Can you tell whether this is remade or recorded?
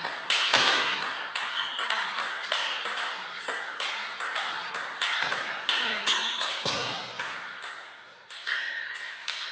remade